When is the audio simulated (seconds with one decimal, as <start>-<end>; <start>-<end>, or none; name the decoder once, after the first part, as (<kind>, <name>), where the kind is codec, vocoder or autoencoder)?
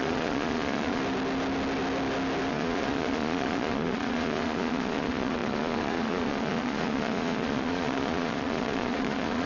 0.0-1.0 (vocoder, Vocos); 2.5-9.5